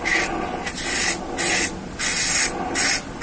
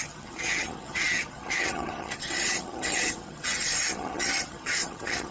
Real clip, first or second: first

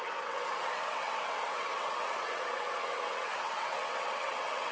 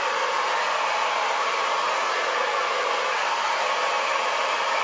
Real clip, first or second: second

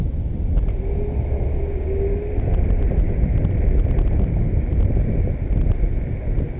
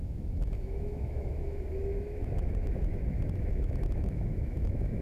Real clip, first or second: first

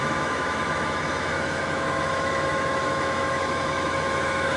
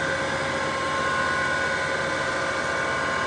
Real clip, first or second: second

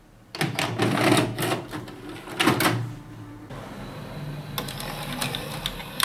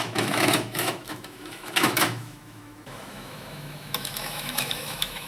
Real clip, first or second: first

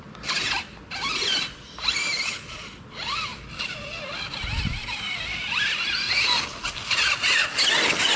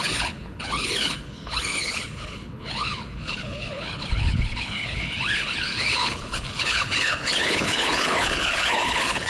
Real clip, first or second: first